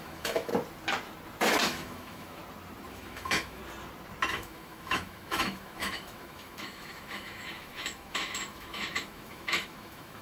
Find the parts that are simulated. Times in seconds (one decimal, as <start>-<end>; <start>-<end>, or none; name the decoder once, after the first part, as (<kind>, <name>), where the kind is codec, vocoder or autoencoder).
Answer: 0.0-0.5 (autoencoder, DAC-VAE); 1.6-2.4; 2.9-3.6; 4.3-10.2